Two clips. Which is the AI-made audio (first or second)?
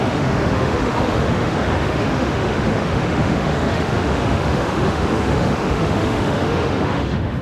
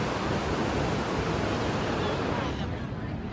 first